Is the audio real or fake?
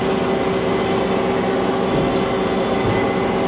real